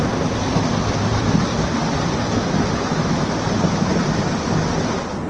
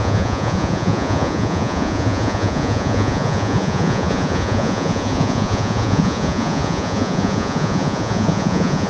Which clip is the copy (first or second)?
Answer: second